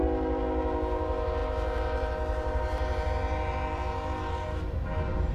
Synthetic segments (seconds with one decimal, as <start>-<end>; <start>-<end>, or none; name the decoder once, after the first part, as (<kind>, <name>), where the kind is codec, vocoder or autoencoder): none